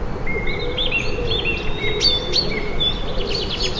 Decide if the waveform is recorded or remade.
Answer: recorded